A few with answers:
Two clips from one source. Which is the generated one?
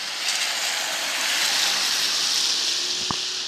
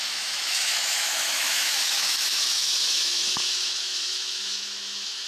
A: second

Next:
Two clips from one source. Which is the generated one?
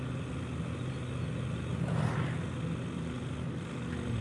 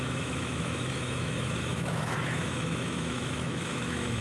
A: second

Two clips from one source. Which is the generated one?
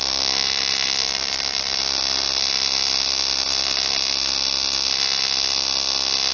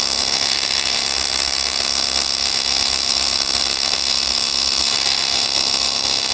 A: second